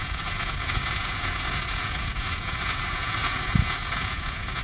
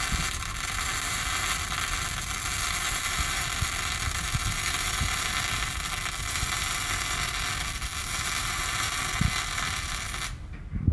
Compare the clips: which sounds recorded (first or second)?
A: second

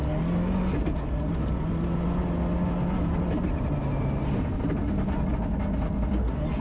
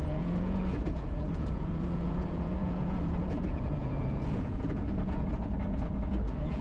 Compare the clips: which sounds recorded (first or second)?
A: first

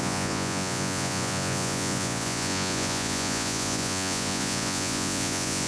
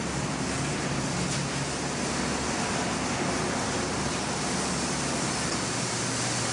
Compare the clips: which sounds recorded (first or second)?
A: second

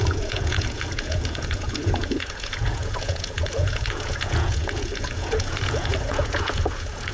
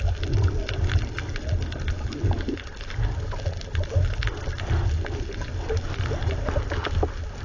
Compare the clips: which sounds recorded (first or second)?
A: second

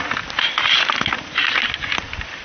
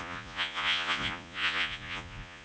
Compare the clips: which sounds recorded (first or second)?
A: first